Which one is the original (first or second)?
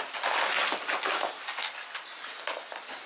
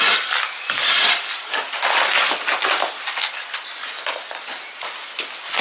first